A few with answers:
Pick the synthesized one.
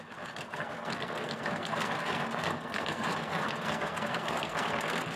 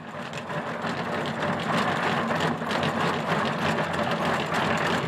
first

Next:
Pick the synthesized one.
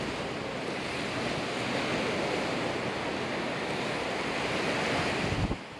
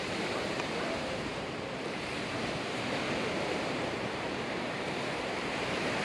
second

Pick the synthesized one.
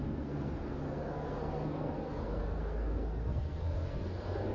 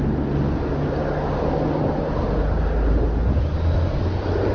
first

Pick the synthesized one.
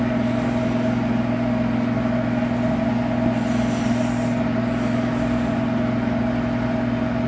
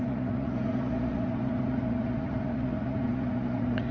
second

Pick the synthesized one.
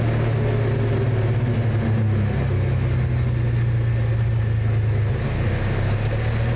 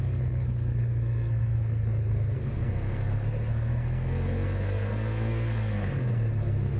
second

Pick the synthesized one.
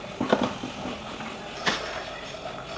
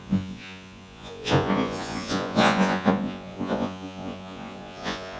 second